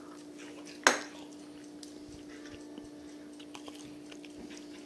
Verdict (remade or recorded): recorded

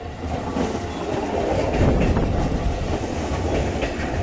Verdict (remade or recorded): recorded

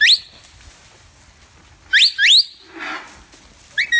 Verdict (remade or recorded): recorded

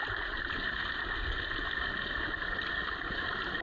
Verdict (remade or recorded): recorded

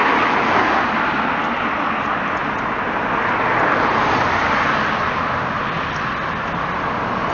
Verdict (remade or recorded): recorded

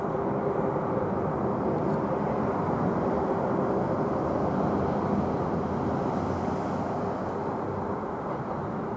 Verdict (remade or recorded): recorded